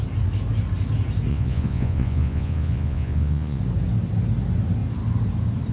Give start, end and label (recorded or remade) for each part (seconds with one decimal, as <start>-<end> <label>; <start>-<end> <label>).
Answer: 0.0-1.3 recorded; 1.3-3.6 remade; 3.6-5.7 recorded